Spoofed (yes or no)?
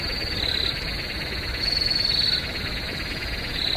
no